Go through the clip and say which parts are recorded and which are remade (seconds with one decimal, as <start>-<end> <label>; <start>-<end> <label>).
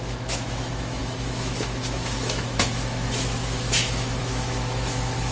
0.0-5.3 remade